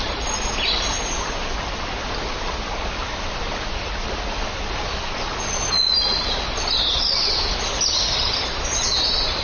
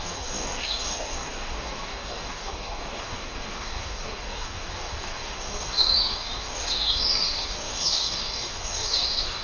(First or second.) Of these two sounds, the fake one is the second